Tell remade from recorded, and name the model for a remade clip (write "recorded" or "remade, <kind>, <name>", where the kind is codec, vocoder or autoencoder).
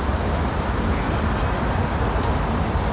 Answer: recorded